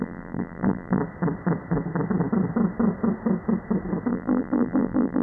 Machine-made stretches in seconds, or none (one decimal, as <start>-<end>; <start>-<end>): 0.0-1.0; 4.1-5.2